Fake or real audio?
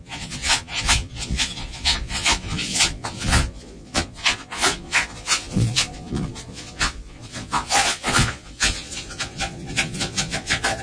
fake